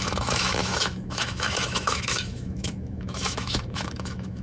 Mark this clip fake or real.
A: fake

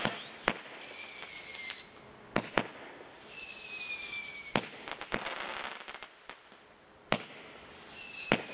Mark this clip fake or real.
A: real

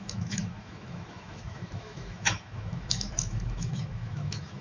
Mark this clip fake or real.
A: fake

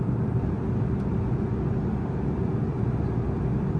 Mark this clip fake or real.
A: real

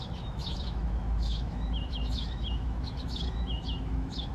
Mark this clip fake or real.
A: fake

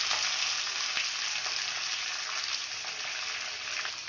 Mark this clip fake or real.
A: real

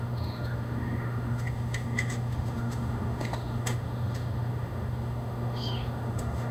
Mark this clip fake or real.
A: fake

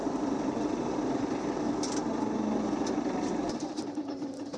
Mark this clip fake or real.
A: real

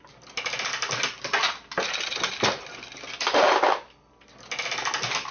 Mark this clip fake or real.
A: real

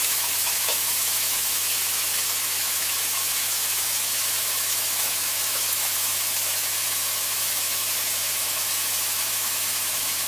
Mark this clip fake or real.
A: fake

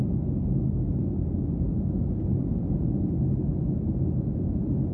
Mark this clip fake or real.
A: real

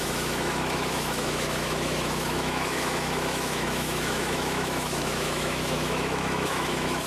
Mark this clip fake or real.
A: fake